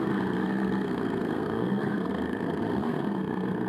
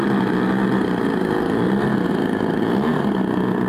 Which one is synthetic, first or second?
first